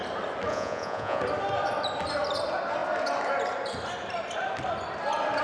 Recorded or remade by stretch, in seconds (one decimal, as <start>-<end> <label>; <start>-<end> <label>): 0.0-0.5 recorded; 0.5-1.2 remade; 1.2-5.4 recorded